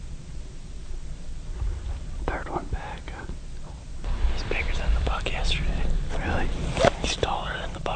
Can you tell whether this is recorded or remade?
remade